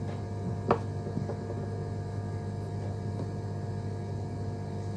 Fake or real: real